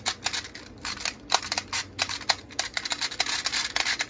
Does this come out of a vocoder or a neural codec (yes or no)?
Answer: no